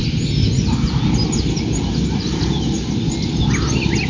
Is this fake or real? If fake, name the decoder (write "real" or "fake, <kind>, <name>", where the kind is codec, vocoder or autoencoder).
real